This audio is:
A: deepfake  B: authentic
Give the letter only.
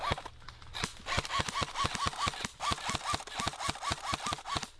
B